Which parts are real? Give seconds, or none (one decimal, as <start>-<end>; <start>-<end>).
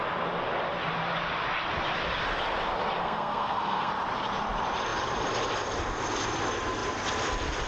0.0-3.0; 3.9-7.7